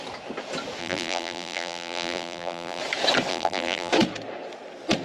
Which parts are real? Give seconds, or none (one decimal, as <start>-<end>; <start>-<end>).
0.0-0.8; 2.8-3.3; 3.9-5.0